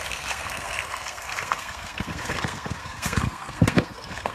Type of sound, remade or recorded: remade